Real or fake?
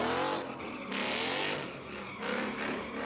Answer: real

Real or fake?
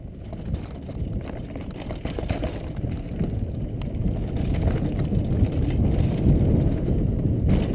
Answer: real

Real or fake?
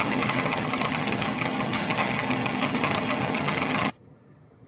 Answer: fake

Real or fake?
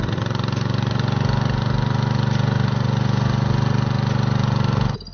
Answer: real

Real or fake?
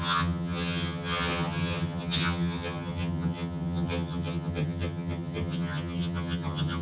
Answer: fake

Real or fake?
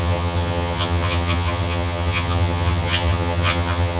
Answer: fake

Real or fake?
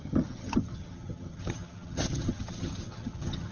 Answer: fake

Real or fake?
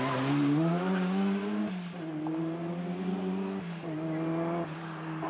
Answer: real